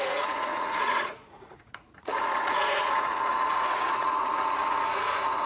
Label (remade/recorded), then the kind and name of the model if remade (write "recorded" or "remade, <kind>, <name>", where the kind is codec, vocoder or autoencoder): remade, vocoder, Vocos